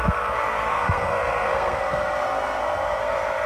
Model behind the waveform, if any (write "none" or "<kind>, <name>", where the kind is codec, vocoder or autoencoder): codec, SNAC